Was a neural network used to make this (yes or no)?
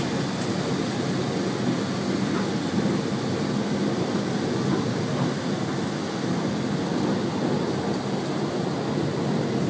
no